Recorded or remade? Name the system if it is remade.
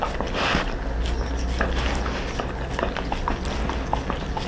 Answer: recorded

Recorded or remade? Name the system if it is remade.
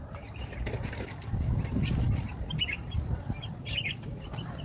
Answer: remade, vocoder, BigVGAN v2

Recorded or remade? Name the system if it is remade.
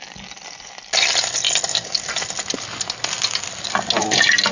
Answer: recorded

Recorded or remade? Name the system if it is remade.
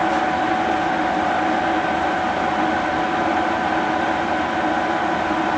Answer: recorded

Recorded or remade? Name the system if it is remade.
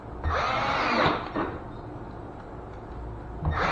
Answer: recorded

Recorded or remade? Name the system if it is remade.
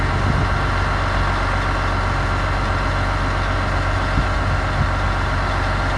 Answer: recorded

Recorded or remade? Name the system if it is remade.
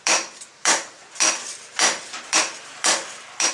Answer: remade, vocoder, BigVGAN v2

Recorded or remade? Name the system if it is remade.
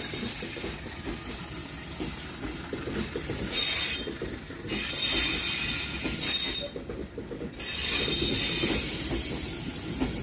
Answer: recorded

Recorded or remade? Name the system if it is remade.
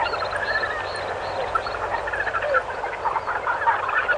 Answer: recorded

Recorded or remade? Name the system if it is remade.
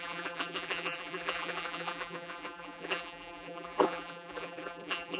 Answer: remade, vocoder, BigVGAN v2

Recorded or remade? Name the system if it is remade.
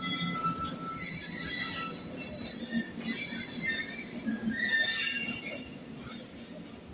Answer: recorded